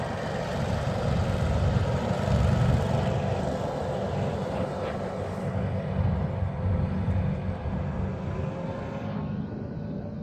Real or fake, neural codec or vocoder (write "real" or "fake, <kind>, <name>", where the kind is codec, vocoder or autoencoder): real